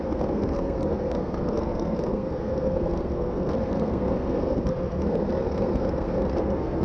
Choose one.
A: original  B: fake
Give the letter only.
B